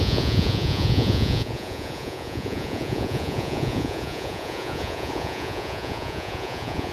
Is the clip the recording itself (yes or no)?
no